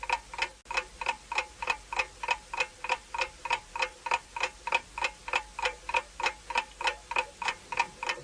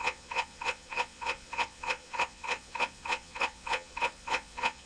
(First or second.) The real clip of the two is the first